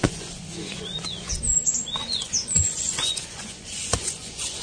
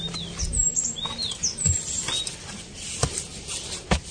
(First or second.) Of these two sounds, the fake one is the first